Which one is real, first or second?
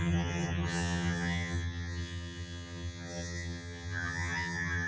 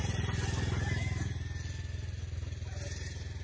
second